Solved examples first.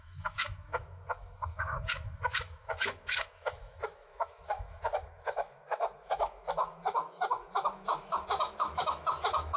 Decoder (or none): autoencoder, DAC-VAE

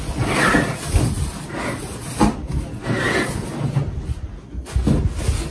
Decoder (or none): none